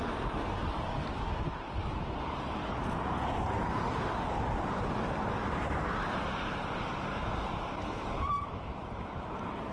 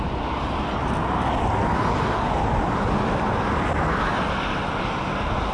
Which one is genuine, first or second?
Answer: second